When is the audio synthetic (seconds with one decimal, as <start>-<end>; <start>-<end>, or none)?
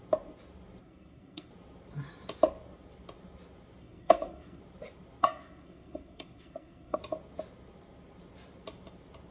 0.8-1.5; 3.8-4.6; 5.2-7.0